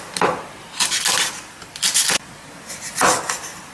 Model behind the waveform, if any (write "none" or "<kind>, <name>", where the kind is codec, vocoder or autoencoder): none